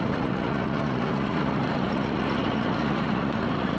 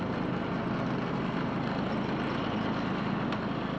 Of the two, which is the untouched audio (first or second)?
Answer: second